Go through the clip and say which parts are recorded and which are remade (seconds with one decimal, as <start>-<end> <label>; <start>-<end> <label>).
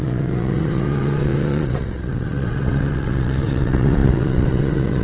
0.0-5.0 remade